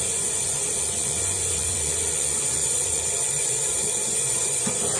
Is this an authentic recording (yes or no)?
no